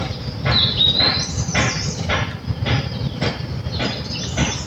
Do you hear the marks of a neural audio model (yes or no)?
yes